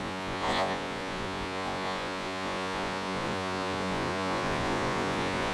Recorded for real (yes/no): no